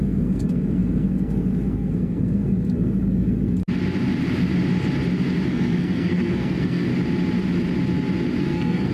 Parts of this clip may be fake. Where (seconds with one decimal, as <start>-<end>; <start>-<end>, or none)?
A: 0.0-3.6; 5.5-6.9; 8.4-8.9

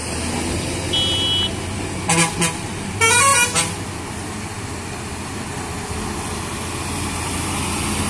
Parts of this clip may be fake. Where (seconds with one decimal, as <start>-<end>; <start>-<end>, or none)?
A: none

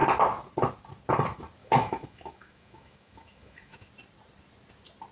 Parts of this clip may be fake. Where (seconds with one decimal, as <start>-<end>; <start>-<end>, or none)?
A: 1.6-3.9

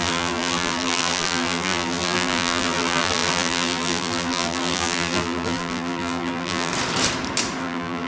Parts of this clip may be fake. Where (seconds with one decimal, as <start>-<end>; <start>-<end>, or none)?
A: 0.0-6.7; 7.6-8.1

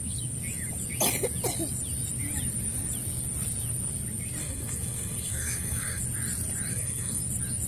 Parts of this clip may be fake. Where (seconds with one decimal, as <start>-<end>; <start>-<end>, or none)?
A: 4.4-6.0; 6.7-7.2

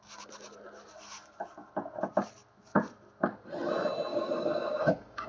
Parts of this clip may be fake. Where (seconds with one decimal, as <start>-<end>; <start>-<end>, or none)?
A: 4.1-5.3

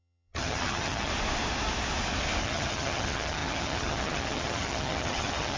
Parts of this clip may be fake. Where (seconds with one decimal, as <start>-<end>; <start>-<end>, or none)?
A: 0.0-1.1; 2.4-5.6

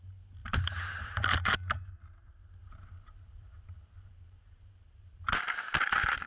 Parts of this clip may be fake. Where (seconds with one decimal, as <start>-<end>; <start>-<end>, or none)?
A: 0.4-1.2; 2.6-5.4